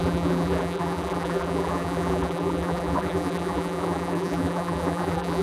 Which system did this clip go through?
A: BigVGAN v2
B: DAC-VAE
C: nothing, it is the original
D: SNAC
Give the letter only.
A